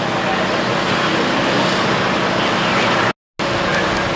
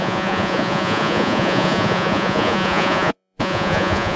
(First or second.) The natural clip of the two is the first